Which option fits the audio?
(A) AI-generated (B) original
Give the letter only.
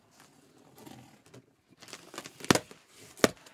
B